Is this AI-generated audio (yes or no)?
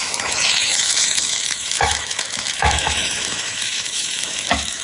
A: yes